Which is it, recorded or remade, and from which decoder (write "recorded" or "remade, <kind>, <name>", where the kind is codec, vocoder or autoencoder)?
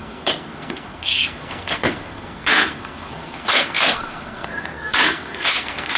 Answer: remade, codec, SNAC